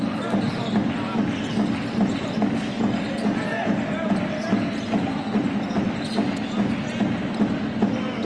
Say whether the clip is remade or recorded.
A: recorded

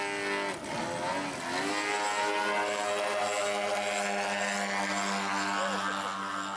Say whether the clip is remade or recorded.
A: recorded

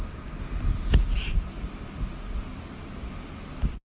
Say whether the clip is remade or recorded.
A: recorded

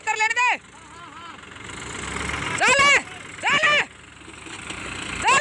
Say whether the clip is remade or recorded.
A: recorded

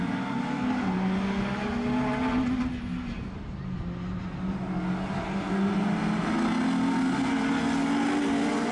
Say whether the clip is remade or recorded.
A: recorded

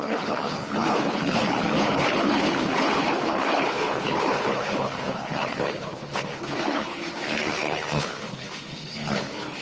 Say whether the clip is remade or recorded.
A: remade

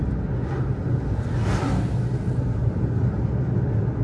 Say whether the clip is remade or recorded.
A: recorded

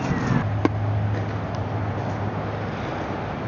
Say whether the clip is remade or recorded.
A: recorded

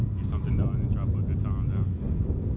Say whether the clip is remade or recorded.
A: recorded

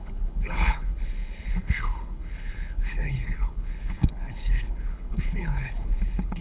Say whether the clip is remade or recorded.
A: remade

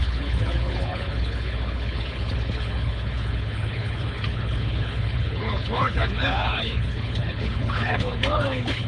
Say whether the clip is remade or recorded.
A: remade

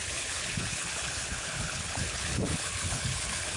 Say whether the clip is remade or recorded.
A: remade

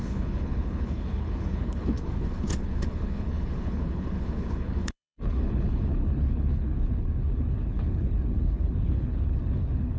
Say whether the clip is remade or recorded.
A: remade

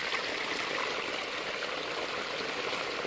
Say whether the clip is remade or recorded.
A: recorded